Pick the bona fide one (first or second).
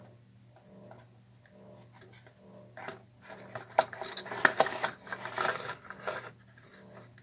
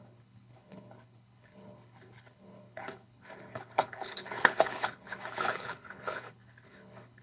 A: first